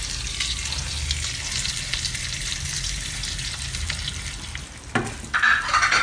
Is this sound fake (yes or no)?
no